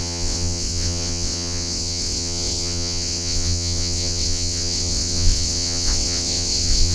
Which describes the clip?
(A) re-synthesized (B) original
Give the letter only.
A